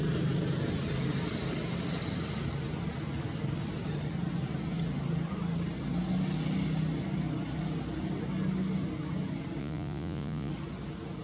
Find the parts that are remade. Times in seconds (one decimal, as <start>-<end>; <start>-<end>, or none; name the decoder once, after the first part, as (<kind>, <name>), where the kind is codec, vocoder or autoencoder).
9.6-10.5 (vocoder, Vocos)